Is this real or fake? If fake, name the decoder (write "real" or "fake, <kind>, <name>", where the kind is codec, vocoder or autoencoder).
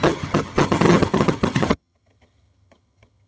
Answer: fake, vocoder, HiFi-GAN